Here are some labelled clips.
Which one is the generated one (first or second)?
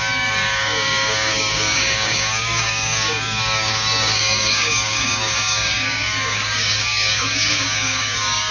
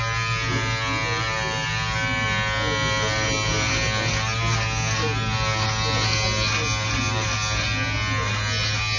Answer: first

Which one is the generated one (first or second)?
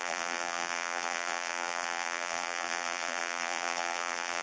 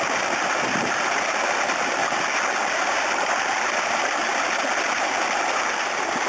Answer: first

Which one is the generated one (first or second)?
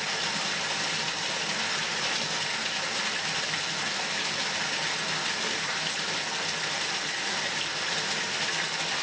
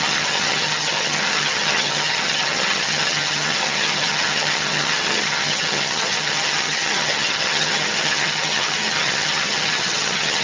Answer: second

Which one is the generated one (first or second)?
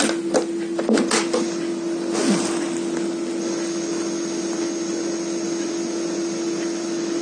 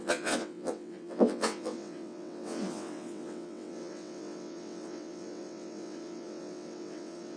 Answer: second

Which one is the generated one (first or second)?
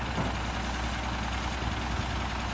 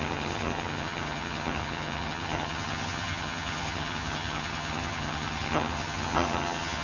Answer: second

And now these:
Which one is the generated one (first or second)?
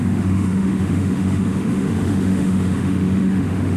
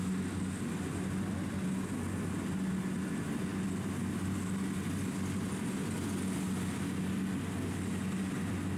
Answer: first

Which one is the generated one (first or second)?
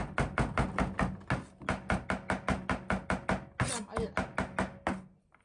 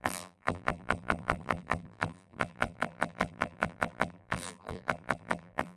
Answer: second